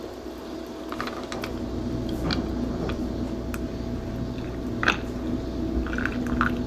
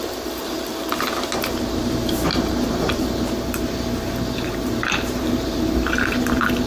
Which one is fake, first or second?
second